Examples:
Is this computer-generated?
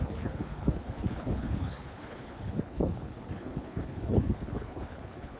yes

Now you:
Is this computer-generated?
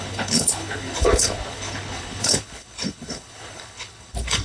yes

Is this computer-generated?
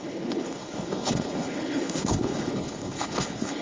yes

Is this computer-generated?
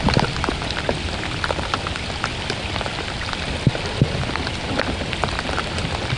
no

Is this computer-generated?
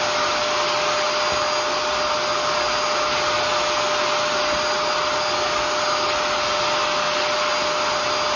no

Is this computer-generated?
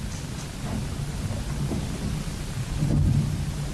no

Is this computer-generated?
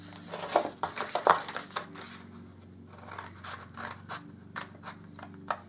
no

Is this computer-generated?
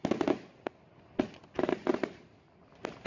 no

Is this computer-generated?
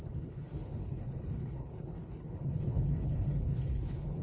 yes